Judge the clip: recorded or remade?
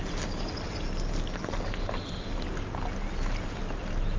recorded